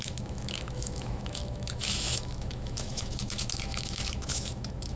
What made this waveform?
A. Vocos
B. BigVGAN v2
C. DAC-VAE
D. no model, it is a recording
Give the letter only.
C